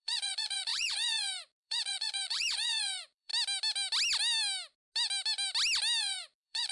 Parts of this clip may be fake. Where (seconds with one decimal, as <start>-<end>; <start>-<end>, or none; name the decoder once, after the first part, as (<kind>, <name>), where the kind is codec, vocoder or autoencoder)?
0.0-3.3 (vocoder, Vocos); 6.0-6.7